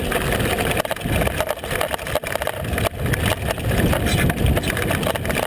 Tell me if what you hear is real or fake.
real